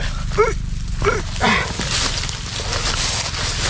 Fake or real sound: real